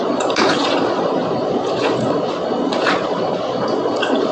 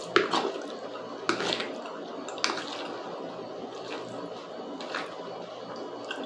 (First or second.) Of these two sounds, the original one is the second